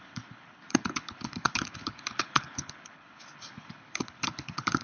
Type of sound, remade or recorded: remade